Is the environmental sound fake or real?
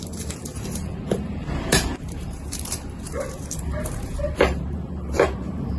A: fake